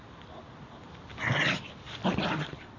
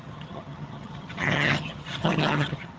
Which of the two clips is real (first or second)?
first